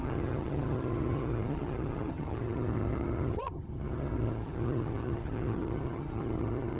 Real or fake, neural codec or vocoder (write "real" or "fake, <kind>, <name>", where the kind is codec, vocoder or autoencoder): fake, vocoder, HiFi-GAN